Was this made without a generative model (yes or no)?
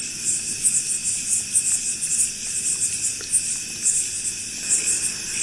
yes